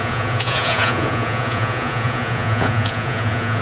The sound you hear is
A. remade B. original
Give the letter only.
A